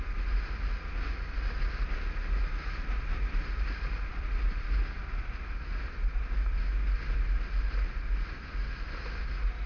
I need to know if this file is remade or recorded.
recorded